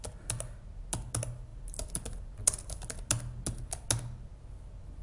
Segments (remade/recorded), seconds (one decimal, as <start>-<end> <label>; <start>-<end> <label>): 0.0-5.0 recorded